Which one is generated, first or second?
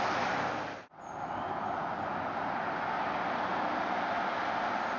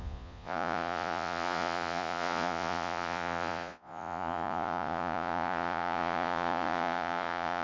second